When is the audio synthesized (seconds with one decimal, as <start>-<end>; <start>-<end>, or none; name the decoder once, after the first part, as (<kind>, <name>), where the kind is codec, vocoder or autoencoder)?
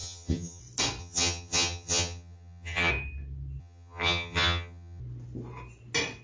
0.0-0.6 (vocoder, HiFi-GAN); 1.0-2.9; 3.6-5.0